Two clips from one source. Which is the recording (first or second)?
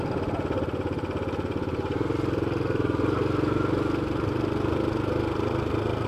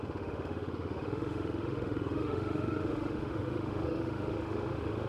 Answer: first